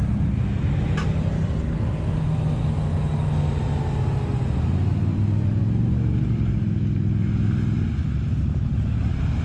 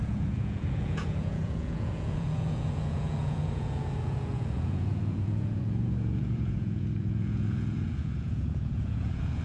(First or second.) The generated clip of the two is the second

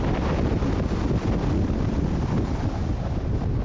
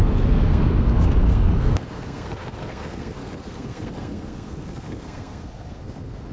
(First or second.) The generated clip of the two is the second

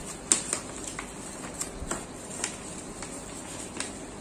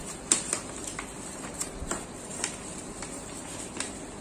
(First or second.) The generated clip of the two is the second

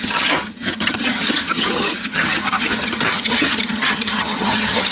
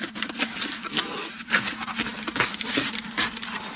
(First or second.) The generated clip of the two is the first